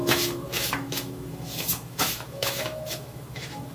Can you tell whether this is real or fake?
fake